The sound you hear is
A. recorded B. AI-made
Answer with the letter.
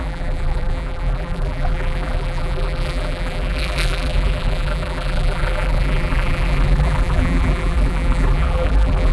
B